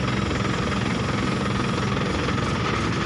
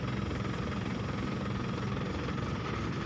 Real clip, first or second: first